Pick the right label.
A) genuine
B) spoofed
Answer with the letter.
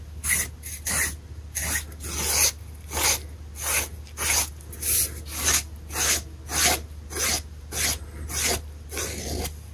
A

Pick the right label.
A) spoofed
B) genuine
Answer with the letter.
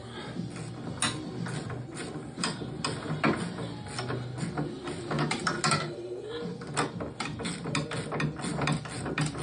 B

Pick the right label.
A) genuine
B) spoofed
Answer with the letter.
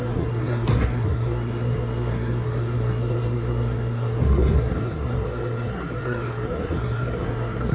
B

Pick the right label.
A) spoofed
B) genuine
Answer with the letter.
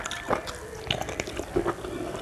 B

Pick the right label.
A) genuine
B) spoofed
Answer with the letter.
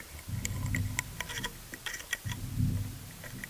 A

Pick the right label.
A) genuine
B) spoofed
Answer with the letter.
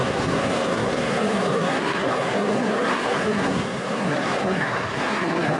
B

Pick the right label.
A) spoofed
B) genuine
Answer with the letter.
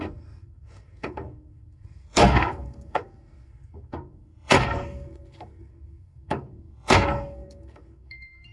A